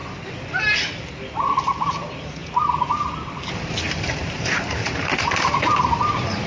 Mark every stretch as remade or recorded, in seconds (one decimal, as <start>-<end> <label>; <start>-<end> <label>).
0.0-0.8 recorded; 0.8-6.5 remade